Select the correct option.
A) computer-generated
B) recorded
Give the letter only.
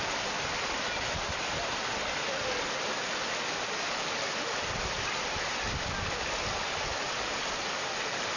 B